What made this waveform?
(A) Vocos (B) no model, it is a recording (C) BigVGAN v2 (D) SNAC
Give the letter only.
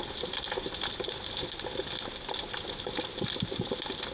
B